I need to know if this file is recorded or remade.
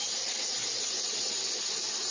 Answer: recorded